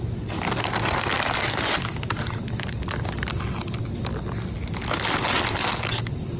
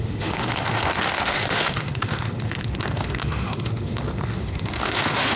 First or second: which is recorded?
first